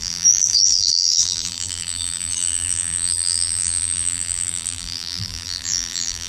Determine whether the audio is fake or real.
fake